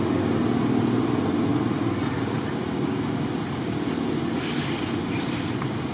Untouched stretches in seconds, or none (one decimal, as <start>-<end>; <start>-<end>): 0.0-5.9